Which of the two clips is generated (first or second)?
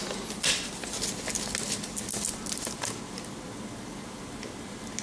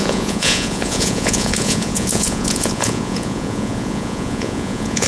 second